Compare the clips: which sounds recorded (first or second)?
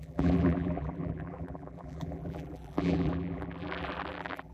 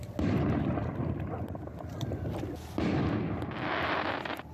second